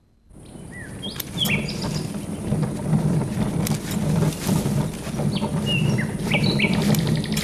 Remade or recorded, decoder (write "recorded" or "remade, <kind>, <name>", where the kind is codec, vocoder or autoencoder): recorded